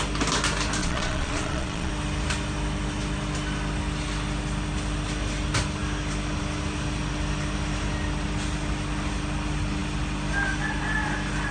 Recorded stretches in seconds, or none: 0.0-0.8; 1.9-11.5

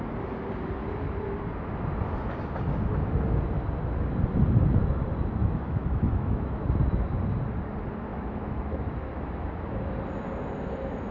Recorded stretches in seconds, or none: 0.0-5.4; 6.6-8.1; 9.9-11.1

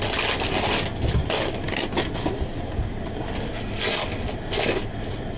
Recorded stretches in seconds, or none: 0.0-5.4

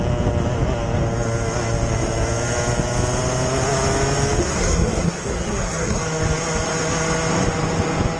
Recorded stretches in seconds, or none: 0.0-4.4; 6.0-8.2

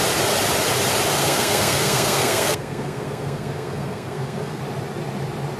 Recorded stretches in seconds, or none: 0.0-1.2; 4.6-5.6

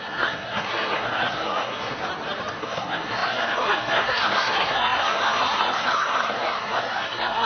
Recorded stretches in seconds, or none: 2.0-2.6

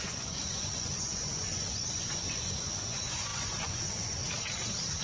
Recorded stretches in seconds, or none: 4.2-5.0

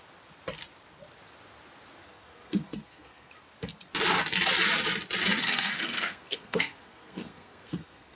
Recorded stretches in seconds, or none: 0.0-2.0; 3.3-5.4